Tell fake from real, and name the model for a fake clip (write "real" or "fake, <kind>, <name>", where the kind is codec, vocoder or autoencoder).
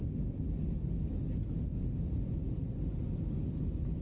real